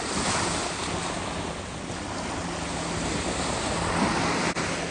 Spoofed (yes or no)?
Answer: no